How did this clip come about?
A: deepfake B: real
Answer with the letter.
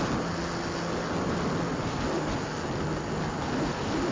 B